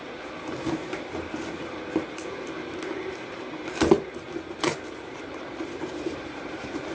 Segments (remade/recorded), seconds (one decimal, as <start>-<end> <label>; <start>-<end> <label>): 0.0-4.7 recorded; 4.7-6.9 remade

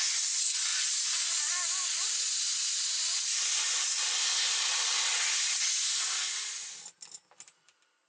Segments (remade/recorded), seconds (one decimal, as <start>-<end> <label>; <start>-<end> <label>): 0.0-8.1 recorded